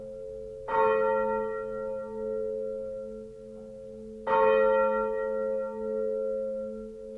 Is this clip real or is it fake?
real